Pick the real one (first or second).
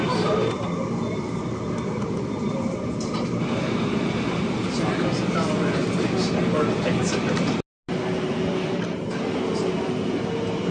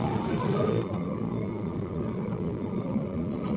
first